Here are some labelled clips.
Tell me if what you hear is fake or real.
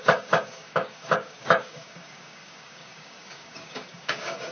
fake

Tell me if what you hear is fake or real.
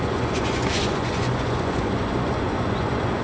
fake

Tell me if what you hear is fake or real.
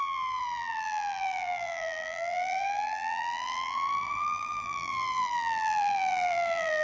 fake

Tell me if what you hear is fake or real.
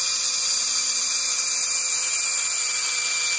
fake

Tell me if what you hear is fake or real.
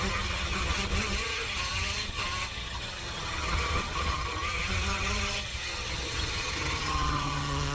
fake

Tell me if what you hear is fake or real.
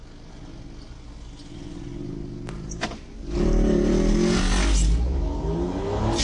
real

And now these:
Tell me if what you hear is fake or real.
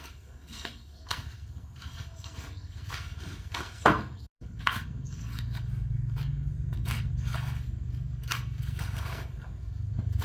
fake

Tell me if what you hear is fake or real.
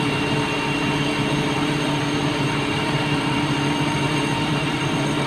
fake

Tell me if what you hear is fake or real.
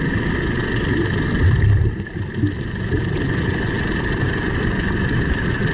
fake